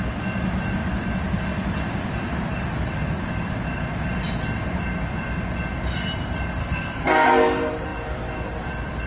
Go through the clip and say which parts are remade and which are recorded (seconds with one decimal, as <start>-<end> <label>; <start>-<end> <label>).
0.0-6.6 recorded; 6.6-7.3 remade; 7.3-9.1 recorded